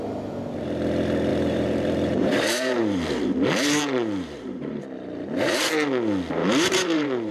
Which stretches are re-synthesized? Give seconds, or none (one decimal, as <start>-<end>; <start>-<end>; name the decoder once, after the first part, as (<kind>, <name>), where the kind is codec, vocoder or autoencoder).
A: 1.3-4.8 (vocoder, BigVGAN v2); 6.4-7.3

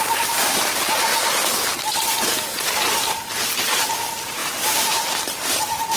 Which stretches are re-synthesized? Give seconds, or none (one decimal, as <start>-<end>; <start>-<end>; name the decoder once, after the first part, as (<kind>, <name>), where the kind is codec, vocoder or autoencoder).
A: none